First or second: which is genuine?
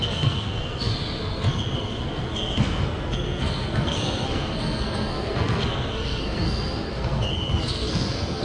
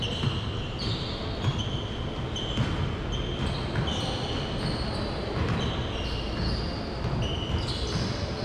second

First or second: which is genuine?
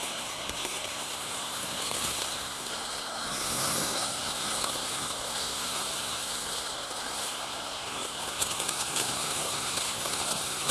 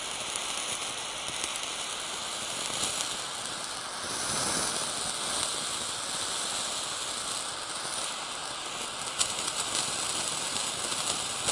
second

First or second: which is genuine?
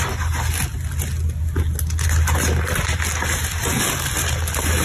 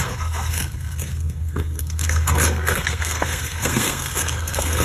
first